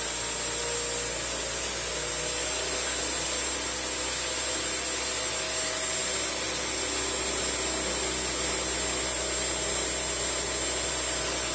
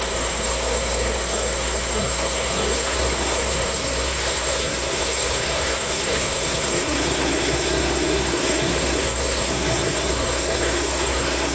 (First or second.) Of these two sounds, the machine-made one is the second